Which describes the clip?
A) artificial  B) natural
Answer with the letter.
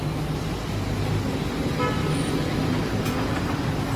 B